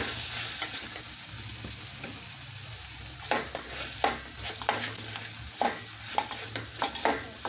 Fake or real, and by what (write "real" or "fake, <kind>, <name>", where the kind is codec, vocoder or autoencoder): real